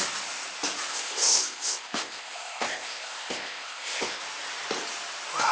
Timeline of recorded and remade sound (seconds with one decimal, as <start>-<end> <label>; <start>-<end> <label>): 0.0-0.9 recorded; 0.9-4.2 remade; 4.2-5.5 recorded